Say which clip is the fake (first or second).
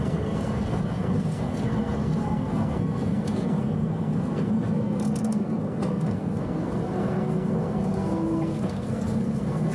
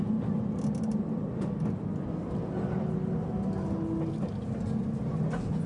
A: first